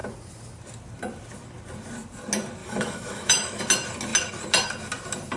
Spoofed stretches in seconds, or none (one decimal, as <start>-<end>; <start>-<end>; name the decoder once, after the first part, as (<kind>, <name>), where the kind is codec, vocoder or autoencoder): 2.6-3.6 (autoencoder, DAC-VAE)